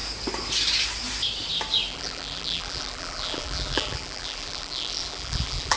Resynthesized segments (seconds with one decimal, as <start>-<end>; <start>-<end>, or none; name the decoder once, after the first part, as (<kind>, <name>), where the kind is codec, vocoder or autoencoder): 1.9-5.8 (vocoder, BigVGAN v2)